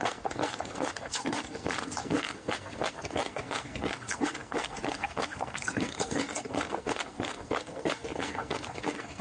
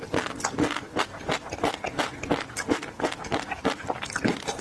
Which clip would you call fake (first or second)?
first